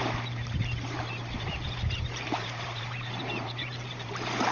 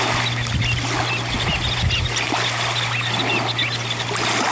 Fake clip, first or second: first